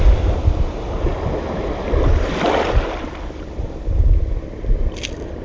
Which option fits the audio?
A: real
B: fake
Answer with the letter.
A